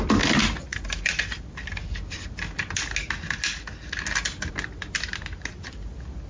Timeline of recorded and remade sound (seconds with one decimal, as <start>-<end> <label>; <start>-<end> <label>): 0.0-6.3 recorded